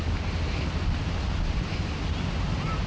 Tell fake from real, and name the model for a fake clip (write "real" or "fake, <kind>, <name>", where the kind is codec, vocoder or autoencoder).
real